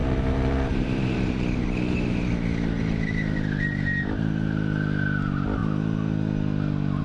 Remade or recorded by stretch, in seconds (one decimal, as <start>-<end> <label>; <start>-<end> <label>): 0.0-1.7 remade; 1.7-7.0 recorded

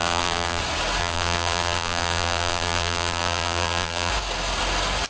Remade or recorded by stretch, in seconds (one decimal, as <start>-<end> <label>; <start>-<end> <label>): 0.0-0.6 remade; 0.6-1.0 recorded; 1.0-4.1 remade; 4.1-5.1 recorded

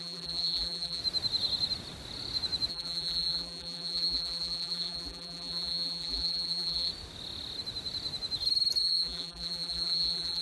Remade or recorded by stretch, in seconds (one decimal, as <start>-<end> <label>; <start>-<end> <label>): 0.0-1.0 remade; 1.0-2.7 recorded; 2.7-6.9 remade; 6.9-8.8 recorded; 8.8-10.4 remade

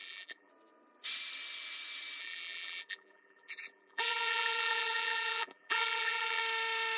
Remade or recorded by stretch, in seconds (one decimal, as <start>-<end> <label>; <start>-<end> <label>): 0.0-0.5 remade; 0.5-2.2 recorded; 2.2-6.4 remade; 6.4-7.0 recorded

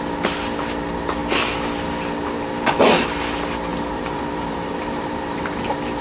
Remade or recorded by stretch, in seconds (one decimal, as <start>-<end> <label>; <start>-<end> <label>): 0.0-3.7 recorded; 3.7-6.0 remade

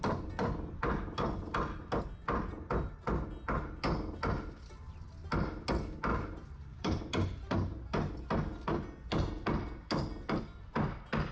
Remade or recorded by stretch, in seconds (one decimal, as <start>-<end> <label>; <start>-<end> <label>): 0.0-6.1 recorded; 6.1-7.0 remade; 7.0-11.3 recorded